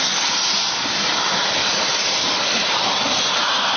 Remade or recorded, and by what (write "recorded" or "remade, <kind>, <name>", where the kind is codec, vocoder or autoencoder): recorded